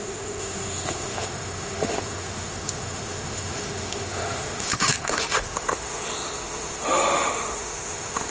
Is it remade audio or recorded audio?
remade